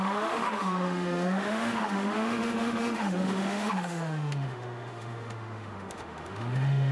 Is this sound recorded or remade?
remade